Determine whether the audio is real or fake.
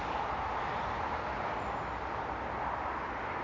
real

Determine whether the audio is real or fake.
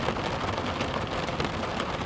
real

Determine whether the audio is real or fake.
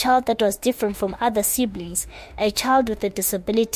fake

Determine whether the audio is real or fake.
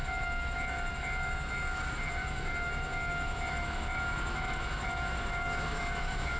fake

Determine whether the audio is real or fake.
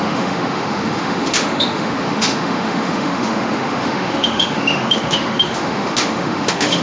fake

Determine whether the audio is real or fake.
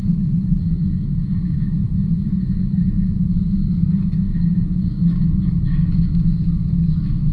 fake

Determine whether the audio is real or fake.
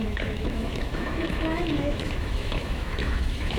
fake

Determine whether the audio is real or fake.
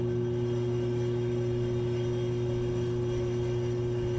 real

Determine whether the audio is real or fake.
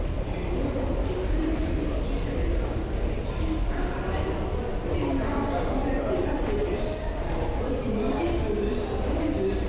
real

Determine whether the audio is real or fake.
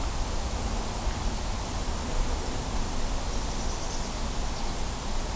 real